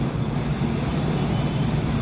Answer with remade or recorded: remade